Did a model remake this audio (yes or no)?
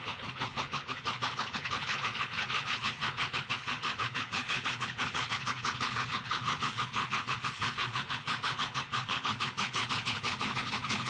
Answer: yes